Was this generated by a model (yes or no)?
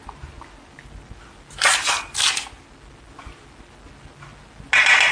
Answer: no